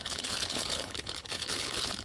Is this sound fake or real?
fake